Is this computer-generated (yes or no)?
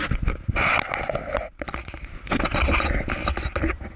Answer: no